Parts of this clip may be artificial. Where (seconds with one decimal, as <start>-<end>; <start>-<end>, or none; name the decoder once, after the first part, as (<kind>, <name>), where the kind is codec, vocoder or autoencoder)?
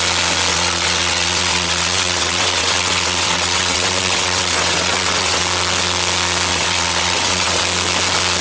0.5-5.4 (vocoder, WaveNeXt); 6.5-7.6